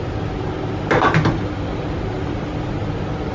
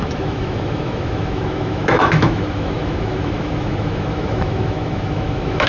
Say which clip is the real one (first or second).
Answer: first